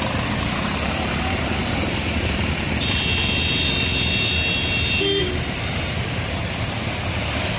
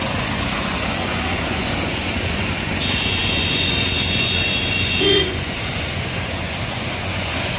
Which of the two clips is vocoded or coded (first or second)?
second